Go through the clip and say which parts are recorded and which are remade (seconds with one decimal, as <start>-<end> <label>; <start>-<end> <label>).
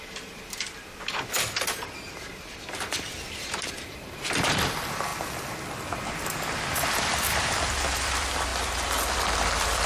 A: 0.0-8.5 remade; 8.5-9.1 recorded; 9.1-9.9 remade